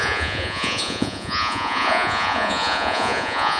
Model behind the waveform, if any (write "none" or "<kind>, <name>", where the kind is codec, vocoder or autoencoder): vocoder, Vocos